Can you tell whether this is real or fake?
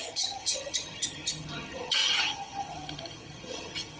fake